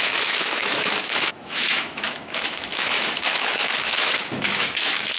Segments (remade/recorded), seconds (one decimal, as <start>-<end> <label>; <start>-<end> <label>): 0.0-5.2 remade